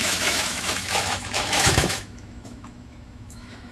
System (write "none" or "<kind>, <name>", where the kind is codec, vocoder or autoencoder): autoencoder, DAC-VAE